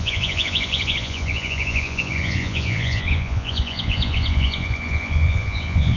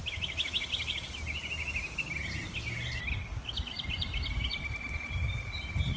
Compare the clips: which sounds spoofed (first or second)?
first